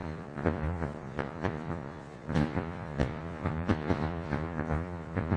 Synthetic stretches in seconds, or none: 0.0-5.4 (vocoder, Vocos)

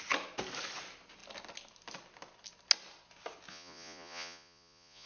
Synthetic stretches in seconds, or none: 3.5-5.1 (vocoder, Vocos)

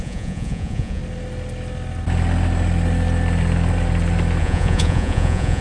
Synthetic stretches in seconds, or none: 0.0-1.0 (vocoder, Vocos); 4.4-5.6

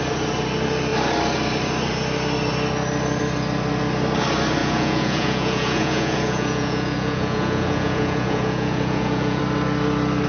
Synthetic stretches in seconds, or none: 4.6-9.4 (vocoder, Vocos)

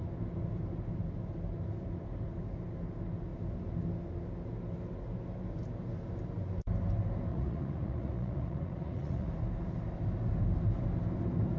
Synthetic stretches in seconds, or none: 7.3-9.3 (vocoder, Vocos)

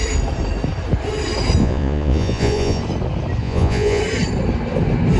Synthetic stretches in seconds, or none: 1.6-2.8 (vocoder, Vocos); 3.4-4.0